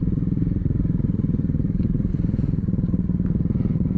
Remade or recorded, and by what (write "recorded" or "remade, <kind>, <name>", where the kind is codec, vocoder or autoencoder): remade, vocoder, Vocos